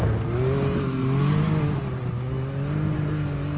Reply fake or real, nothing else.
real